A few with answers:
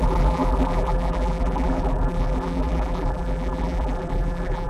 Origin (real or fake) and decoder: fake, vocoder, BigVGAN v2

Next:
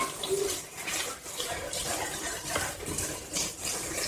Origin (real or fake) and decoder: fake, vocoder, BigVGAN v2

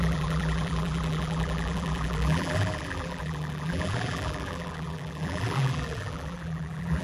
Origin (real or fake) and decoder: fake, vocoder, BigVGAN v2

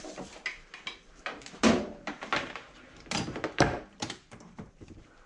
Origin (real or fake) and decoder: fake, vocoder, BigVGAN v2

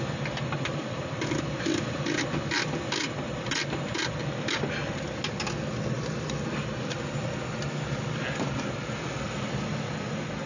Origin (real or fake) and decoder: real